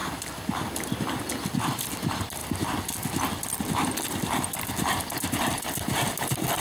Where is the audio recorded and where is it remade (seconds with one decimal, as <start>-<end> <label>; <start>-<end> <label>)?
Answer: 0.0-6.6 recorded